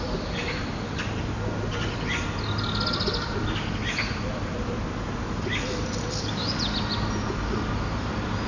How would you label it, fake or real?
real